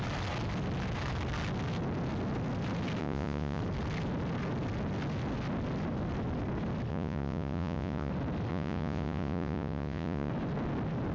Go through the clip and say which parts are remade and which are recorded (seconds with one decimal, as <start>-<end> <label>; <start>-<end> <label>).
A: 0.0-3.0 recorded; 3.0-3.6 remade; 3.6-6.9 recorded; 6.9-8.1 remade; 8.1-8.5 recorded; 8.5-10.3 remade; 10.3-11.1 recorded